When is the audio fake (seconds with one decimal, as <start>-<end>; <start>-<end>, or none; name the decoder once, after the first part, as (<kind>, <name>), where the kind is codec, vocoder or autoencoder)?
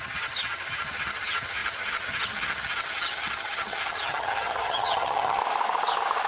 0.0-5.4 (vocoder, HiFi-GAN)